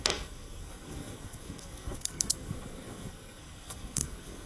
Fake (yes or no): yes